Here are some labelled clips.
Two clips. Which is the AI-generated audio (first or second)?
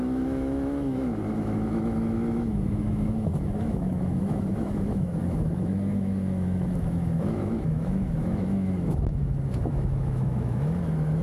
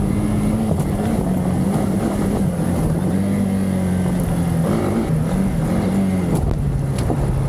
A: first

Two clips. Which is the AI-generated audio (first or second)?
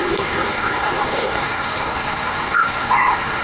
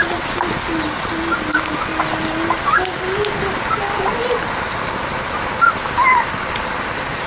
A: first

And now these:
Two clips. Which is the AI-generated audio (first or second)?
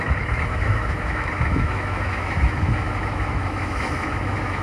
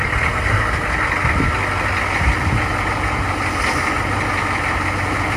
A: first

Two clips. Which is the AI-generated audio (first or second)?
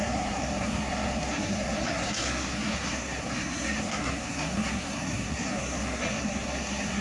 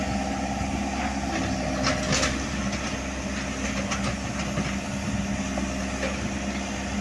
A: first